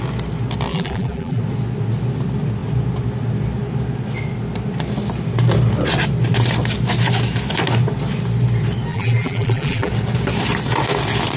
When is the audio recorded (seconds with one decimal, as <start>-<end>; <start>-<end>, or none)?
0.0-0.7; 1.4-8.9; 9.9-11.4